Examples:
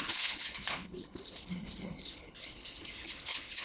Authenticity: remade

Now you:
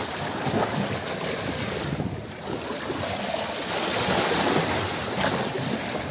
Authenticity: recorded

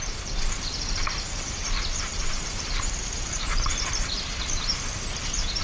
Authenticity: remade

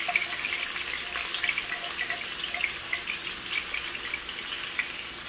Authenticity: recorded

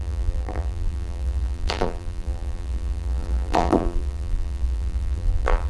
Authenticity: remade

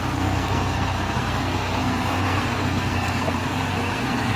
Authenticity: remade